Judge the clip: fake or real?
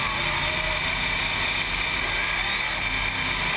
real